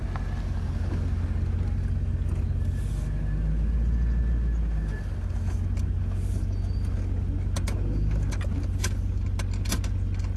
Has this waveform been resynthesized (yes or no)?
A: no